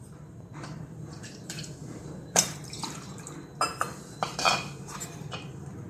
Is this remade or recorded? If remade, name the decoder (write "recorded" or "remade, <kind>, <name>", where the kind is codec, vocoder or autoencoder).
remade, vocoder, BigVGAN v2